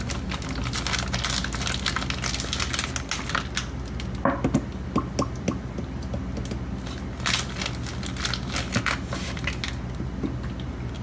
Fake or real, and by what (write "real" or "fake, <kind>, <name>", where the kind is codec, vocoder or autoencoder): real